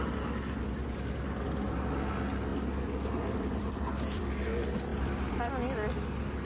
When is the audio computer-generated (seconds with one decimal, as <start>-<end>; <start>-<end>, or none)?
2.5-4.2; 4.9-5.5